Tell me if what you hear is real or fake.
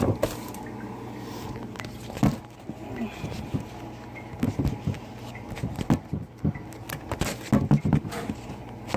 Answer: real